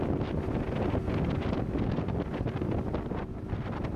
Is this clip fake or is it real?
real